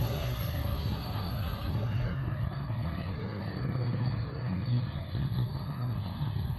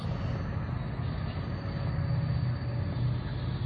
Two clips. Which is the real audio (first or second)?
second